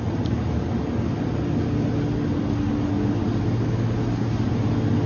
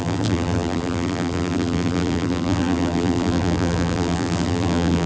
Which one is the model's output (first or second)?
second